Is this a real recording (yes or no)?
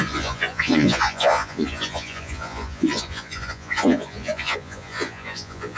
no